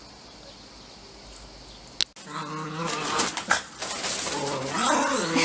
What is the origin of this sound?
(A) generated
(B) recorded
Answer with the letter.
B